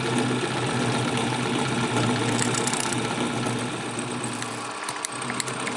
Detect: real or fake real